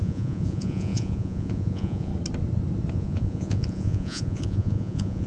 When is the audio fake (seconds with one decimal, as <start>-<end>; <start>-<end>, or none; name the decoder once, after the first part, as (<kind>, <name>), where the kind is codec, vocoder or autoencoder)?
0.0-2.1 (vocoder, Vocos); 2.9-5.3